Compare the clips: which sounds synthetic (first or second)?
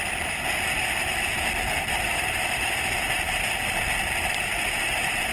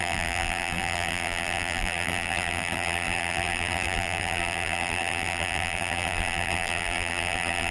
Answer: second